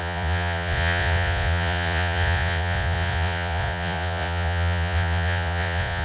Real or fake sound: fake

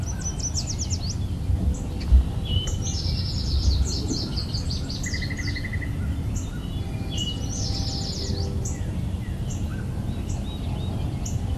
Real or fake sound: real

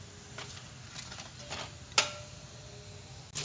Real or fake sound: real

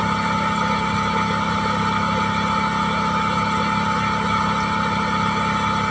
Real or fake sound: real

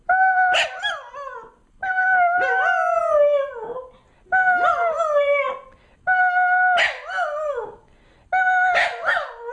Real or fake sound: real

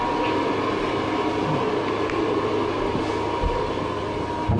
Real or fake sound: real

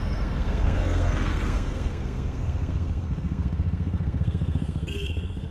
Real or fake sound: fake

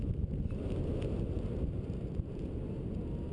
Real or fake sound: real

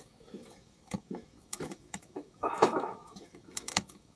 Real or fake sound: fake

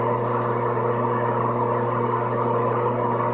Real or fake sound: real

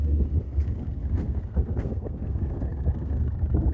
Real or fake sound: fake